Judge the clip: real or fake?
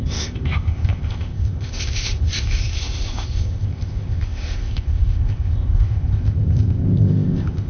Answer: fake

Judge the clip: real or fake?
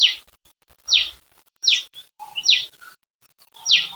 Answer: fake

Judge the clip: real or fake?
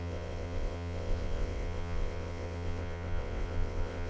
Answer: fake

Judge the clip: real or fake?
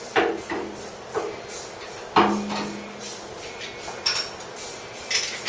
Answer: real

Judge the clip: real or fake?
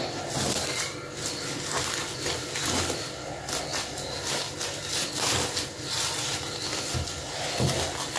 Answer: real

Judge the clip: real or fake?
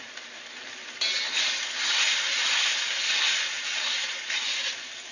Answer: real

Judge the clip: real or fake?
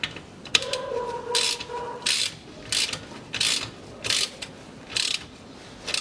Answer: real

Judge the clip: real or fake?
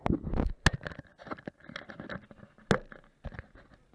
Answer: real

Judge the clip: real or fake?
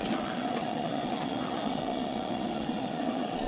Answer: fake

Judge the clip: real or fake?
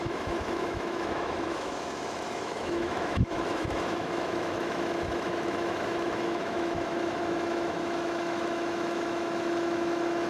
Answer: fake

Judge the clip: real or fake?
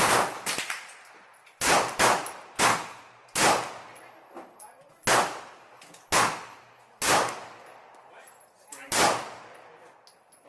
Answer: real